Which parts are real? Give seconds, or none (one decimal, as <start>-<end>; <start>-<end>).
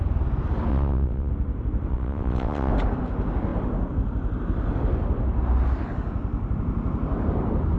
0.0-0.7; 1.3-1.9; 2.7-7.8